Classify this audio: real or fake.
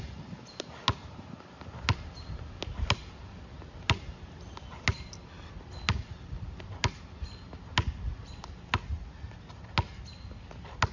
real